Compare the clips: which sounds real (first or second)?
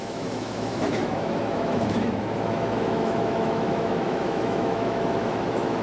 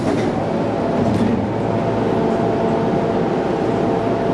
second